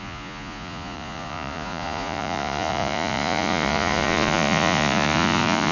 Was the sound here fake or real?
fake